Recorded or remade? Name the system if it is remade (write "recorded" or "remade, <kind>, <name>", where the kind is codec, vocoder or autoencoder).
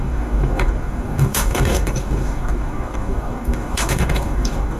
remade, codec, DAC